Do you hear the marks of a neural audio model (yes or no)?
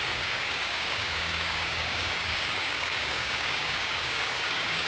yes